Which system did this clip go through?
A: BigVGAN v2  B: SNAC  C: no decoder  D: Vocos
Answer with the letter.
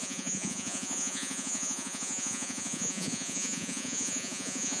D